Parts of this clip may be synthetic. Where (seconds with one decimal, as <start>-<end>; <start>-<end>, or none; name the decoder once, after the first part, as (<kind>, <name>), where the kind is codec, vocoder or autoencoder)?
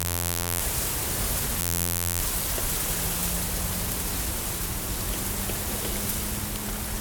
0.0-0.6 (vocoder, BigVGAN v2); 1.6-2.2